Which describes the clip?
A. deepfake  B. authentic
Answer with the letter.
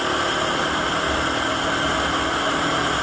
B